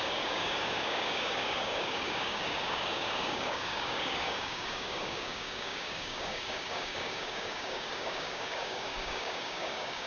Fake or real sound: fake